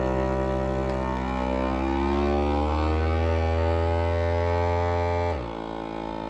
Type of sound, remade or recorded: recorded